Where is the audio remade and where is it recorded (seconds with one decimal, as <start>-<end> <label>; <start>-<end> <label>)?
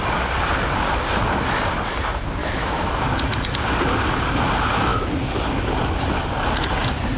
0.0-2.4 recorded; 2.4-2.9 remade; 2.9-7.2 recorded